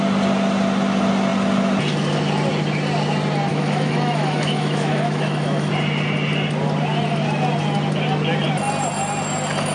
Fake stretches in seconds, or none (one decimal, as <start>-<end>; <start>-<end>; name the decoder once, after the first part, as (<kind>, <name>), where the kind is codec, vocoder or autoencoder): 3.5-5.7 (autoencoder, DAC-VAE)